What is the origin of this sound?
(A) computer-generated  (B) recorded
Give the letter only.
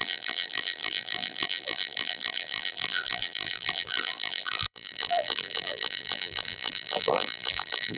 A